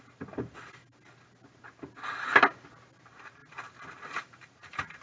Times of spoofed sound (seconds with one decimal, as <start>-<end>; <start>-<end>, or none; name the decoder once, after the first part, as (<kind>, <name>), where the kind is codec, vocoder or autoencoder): 0.0-0.8 (vocoder, BigVGAN v2); 3.0-3.4; 3.9-5.0

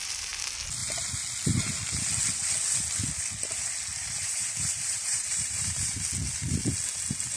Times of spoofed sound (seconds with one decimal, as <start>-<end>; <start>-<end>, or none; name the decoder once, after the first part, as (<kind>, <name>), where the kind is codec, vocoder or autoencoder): 4.2-5.9 (vocoder, BigVGAN v2)